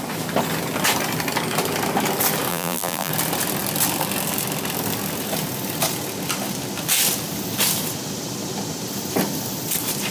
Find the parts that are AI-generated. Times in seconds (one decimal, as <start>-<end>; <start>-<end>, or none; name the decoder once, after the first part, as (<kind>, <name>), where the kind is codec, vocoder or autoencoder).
2.5-3.1 (vocoder, BigVGAN v2)